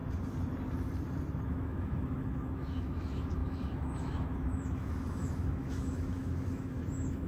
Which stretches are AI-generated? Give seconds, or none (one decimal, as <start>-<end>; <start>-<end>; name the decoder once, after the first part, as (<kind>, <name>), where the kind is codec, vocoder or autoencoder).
1.5-7.3 (autoencoder, DAC-VAE)